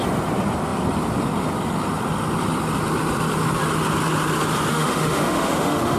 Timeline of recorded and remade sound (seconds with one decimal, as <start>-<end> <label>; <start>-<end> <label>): 0.0-4.7 recorded; 4.7-6.0 remade